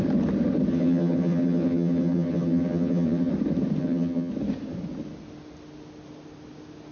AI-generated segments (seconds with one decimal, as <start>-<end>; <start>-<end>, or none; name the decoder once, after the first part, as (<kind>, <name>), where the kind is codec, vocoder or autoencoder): 0.7-3.3 (vocoder, HiFi-GAN); 3.8-4.3